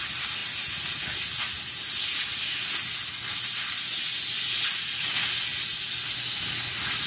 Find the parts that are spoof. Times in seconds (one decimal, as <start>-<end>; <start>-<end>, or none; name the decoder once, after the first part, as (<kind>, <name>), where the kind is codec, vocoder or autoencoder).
none